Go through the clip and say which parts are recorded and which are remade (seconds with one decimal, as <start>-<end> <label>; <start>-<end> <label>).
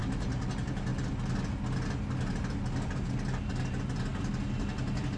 0.0-5.2 recorded